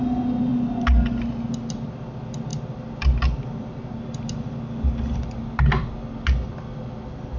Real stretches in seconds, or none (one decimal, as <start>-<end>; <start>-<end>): 0.0-7.4